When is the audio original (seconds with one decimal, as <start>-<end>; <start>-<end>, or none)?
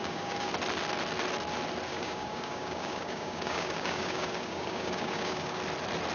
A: 0.5-1.9; 5.6-6.1